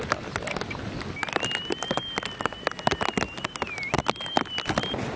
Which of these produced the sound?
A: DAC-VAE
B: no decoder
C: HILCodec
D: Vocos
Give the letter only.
B